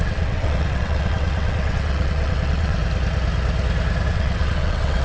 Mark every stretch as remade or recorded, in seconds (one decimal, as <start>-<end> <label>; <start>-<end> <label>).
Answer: 0.0-2.8 remade; 2.8-4.1 recorded; 4.1-5.0 remade